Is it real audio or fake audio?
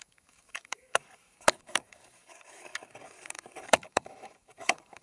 fake